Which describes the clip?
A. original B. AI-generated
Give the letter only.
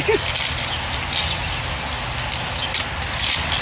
A